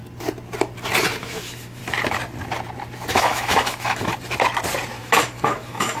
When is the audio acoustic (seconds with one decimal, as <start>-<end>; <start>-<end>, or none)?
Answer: 0.0-1.2; 1.8-3.1; 4.1-5.0